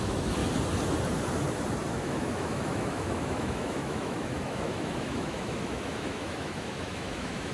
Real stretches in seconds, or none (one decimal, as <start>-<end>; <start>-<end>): 0.4-1.9